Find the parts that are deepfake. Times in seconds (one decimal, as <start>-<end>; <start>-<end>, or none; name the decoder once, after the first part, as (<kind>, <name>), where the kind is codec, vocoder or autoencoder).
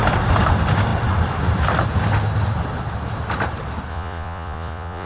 3.9-5.1 (vocoder, Vocos)